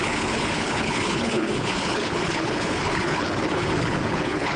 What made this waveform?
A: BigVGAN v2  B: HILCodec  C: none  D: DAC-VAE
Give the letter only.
B